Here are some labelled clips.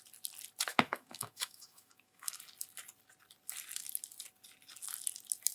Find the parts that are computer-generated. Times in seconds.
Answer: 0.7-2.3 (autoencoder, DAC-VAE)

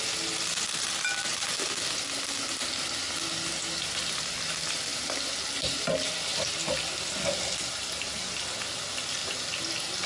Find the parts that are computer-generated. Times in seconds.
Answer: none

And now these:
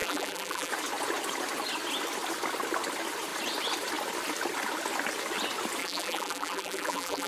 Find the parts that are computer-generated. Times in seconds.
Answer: 0.0-0.7 (vocoder, BigVGAN v2); 5.8-7.3

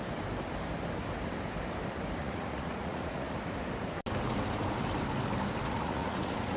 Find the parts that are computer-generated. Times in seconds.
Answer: 2.2-3.4 (vocoder, Vocos); 5.6-6.6

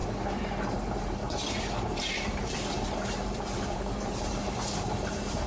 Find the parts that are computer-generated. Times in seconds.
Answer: 0.7-5.5 (vocoder, BigVGAN v2)

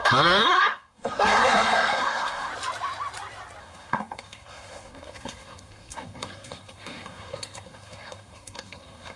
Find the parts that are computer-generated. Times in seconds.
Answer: 0.0-2.5 (codec, SNAC); 3.6-9.2

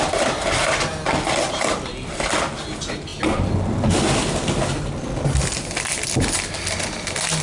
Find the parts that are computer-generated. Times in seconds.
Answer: none

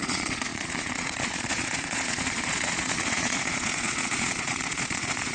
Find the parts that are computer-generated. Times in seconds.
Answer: 0.0-5.3 (vocoder, Vocos)